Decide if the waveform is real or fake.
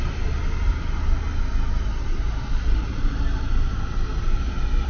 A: real